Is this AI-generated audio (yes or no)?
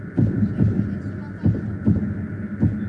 no